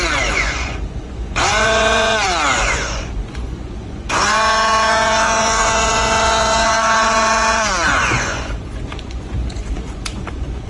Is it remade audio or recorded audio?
remade